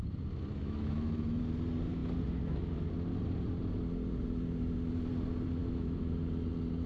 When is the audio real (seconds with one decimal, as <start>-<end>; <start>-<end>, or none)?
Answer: 0.0-0.5; 1.4-5.6; 6.1-6.9